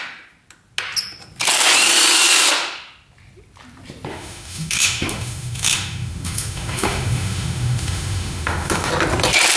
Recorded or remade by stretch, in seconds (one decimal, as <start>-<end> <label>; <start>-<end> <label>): 0.0-4.1 recorded; 4.1-8.9 remade; 8.9-9.6 recorded